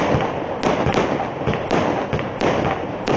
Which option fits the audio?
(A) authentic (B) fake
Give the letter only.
A